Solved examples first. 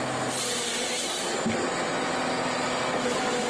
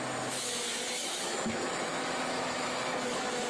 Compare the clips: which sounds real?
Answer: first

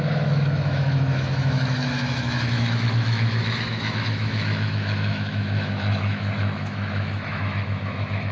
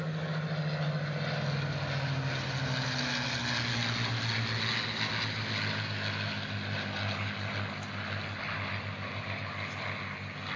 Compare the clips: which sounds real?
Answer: second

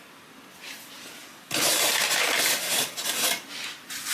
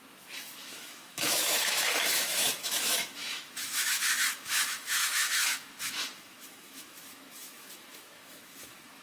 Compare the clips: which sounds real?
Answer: first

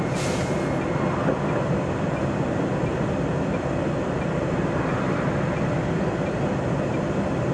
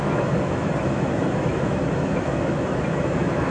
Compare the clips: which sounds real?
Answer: first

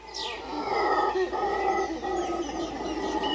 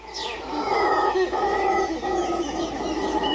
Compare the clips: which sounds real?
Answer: first